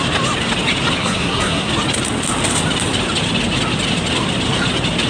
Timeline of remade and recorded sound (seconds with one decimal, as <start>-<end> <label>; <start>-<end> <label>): 0.0-1.0 recorded; 1.0-1.7 remade; 1.7-5.1 recorded